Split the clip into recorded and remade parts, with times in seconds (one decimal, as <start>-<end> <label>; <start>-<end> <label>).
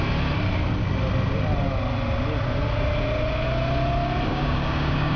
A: 0.0-4.3 recorded; 4.3-5.2 remade